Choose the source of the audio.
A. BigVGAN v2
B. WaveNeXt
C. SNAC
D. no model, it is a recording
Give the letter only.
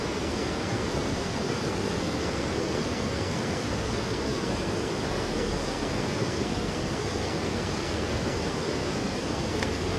C